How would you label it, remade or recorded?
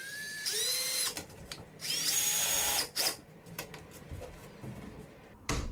remade